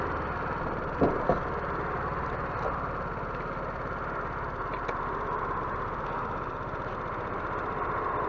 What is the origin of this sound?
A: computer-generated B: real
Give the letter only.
B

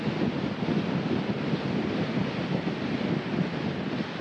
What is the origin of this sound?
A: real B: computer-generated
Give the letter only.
A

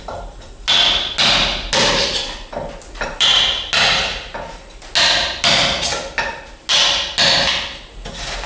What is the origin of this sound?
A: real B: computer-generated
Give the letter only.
A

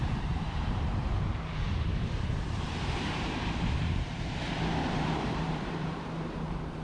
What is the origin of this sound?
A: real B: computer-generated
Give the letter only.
B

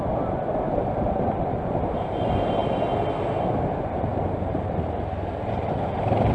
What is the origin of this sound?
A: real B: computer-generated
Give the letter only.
A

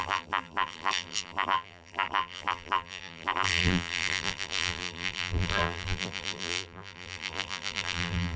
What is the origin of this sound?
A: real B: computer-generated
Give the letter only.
B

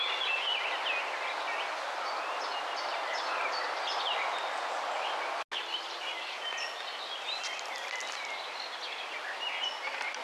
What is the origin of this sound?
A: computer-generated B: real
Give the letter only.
B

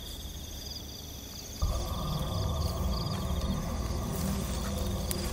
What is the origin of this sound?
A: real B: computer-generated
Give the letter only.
A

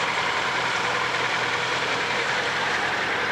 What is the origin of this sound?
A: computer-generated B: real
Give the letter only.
A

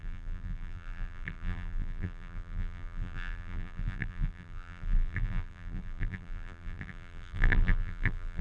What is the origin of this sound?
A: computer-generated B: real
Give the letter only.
A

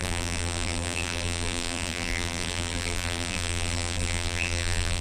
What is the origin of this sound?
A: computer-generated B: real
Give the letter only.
A